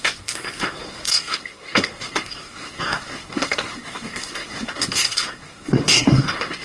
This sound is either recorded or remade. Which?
remade